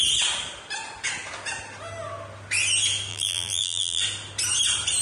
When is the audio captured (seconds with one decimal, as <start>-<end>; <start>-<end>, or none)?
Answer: 0.0-3.1; 4.0-5.0